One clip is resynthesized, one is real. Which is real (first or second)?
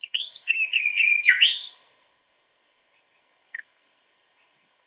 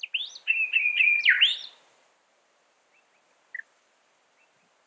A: second